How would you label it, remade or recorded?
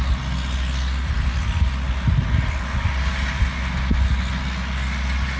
recorded